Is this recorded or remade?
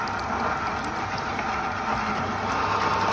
recorded